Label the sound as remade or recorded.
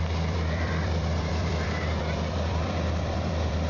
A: remade